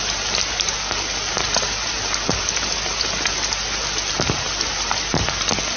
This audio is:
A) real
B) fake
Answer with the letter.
A